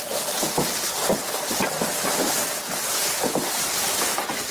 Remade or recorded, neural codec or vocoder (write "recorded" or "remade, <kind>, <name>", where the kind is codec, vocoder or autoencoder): recorded